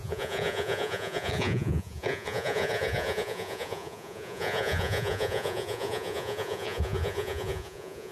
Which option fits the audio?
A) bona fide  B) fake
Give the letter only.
B